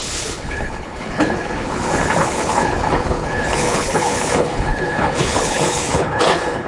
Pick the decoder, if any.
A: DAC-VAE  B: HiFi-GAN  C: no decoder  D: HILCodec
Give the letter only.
D